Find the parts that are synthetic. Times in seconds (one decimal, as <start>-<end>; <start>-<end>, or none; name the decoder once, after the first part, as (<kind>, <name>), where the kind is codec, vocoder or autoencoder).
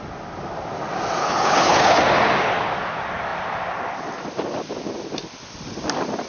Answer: 1.2-2.0 (codec, HILCodec)